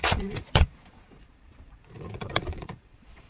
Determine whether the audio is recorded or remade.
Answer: remade